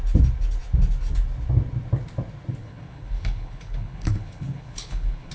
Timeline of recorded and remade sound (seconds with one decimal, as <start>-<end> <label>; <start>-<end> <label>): 0.0-2.6 recorded; 2.6-5.3 remade